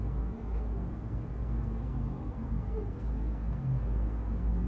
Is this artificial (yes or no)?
yes